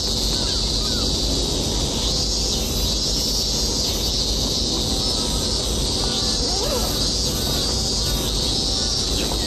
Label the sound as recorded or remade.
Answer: recorded